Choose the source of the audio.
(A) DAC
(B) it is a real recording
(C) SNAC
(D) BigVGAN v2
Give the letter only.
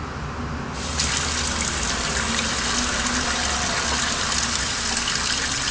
B